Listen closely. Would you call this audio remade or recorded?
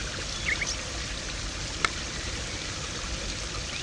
remade